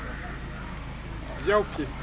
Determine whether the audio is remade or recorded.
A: recorded